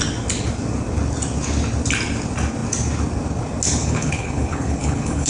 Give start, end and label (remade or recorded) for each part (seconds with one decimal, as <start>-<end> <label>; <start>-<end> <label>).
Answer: 0.0-3.8 recorded; 3.8-5.3 remade